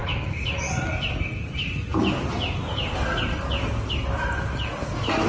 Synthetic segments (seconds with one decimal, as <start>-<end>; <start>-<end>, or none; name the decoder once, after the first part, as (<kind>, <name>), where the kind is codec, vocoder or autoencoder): none